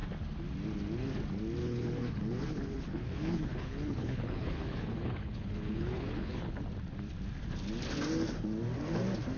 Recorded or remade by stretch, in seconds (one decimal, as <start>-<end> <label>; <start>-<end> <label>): 0.0-1.6 recorded; 1.6-6.6 remade; 6.6-9.4 recorded